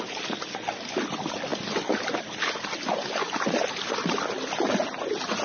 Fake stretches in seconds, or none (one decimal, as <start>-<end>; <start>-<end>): none